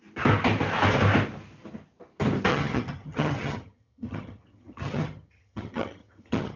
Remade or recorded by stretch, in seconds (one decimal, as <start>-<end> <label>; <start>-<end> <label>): 0.0-2.5 recorded; 2.5-6.6 remade